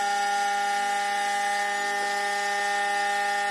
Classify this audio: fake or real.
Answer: real